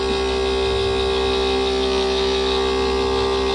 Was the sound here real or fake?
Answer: real